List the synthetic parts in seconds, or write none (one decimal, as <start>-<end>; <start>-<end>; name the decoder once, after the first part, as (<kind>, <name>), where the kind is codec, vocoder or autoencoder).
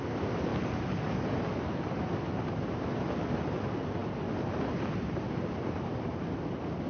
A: none